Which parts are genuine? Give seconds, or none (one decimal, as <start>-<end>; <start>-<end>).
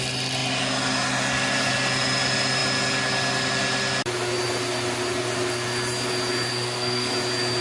0.0-6.5; 7.1-7.6